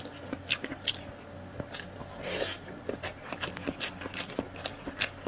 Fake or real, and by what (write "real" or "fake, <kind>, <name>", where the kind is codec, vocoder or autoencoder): real